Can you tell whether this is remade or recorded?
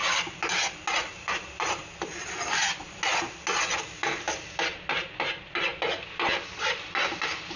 recorded